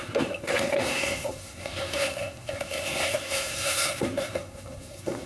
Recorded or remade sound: remade